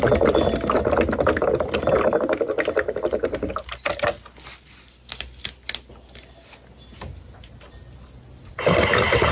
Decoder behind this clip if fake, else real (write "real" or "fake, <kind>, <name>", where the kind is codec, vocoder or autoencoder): real